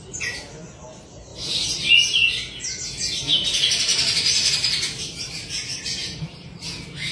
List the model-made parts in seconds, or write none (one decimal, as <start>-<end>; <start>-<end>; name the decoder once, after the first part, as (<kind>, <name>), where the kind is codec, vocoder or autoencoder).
3.9-4.5 (vocoder, BigVGAN v2)